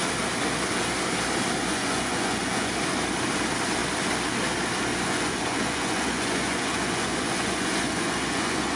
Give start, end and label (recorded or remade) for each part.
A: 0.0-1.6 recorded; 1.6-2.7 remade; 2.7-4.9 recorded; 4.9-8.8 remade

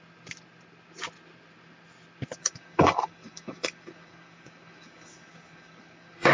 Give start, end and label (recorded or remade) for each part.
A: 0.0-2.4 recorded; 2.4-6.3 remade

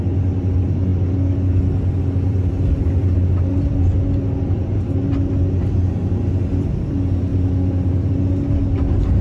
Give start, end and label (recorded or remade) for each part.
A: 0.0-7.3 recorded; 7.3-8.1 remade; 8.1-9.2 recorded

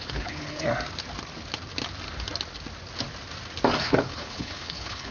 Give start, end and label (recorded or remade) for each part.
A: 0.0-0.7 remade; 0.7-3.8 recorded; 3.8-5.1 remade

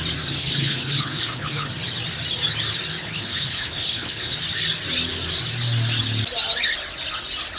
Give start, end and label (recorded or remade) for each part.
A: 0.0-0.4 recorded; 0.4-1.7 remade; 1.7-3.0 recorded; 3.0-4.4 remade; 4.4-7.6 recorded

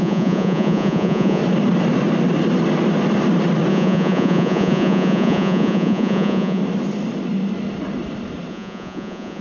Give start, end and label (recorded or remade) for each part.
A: 0.0-1.4 remade; 1.4-3.7 recorded; 3.7-6.6 remade; 6.6-8.5 recorded; 8.5-9.4 remade